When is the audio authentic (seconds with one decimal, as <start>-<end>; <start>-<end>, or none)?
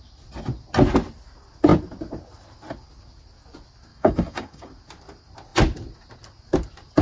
0.0-3.9; 4.7-7.0